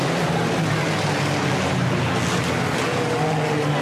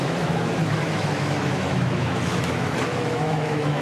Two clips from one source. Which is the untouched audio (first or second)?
first